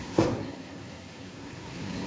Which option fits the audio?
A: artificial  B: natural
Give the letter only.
A